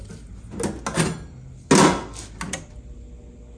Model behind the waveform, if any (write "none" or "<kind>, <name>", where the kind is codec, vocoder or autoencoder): none